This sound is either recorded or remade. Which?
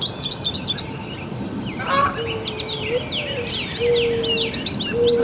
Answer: recorded